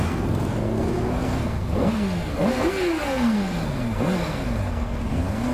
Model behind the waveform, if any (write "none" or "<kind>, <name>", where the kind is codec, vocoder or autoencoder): codec, SNAC